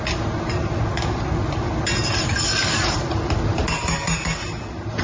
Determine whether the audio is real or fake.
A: real